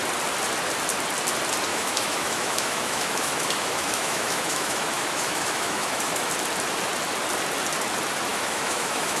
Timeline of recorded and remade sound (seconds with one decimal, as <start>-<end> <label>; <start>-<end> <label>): 0.0-1.7 recorded; 1.7-6.3 remade; 6.3-8.3 recorded; 8.3-9.2 remade